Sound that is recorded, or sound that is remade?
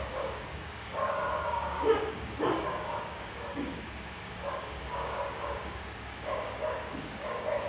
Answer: remade